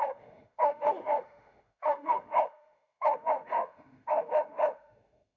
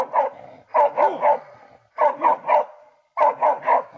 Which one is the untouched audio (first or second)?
second